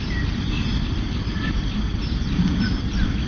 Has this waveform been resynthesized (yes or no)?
no